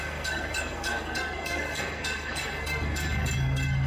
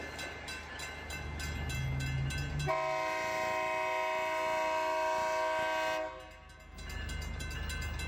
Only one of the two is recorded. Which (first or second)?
second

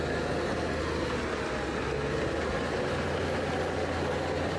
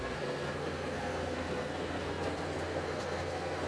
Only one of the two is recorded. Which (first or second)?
first